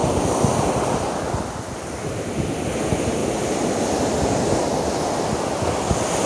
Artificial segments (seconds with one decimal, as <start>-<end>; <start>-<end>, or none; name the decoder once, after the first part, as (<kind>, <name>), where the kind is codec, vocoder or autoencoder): 0.0-1.4 (vocoder, BigVGAN v2); 3.2-4.1